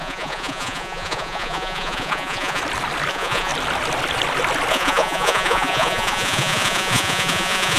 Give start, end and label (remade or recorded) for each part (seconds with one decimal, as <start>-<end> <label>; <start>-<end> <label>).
0.0-2.6 remade; 2.6-3.1 recorded; 3.1-3.5 remade; 3.5-4.7 recorded; 4.7-7.8 remade